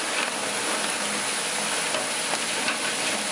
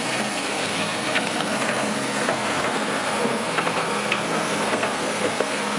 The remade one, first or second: second